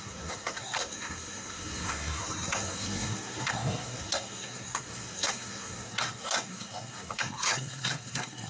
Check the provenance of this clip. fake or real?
fake